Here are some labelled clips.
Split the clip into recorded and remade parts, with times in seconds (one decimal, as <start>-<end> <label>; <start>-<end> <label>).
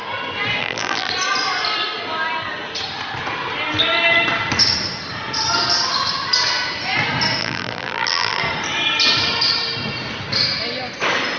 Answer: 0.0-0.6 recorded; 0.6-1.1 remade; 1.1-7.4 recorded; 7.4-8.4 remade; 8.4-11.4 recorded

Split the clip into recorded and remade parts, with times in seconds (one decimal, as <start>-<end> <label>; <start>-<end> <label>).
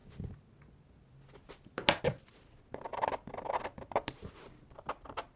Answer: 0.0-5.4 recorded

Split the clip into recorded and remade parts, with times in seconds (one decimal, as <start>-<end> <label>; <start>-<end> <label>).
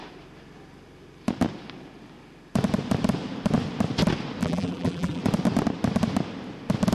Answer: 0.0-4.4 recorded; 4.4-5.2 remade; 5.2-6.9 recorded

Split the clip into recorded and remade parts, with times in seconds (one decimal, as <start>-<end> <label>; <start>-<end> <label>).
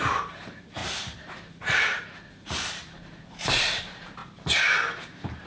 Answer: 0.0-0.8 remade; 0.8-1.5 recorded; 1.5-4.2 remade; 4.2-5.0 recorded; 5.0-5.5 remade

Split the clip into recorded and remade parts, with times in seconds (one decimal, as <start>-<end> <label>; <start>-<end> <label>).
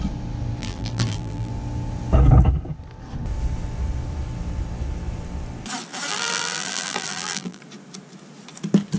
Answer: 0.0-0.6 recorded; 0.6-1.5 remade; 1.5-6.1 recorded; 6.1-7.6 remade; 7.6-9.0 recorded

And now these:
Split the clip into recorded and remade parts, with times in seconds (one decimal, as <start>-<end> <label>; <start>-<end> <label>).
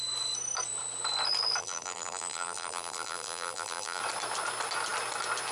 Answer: 0.0-1.6 recorded; 1.6-4.0 remade; 4.0-5.5 recorded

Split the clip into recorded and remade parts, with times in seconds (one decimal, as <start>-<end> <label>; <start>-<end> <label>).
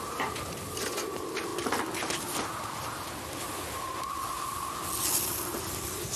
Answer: 0.0-1.5 remade; 1.5-5.2 recorded; 5.2-6.2 remade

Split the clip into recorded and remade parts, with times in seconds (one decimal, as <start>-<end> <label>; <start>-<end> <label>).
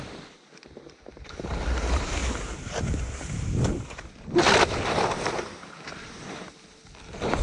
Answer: 0.0-7.4 remade